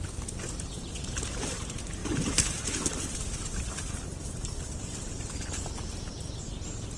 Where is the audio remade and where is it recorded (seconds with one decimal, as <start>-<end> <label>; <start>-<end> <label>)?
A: 0.0-7.0 recorded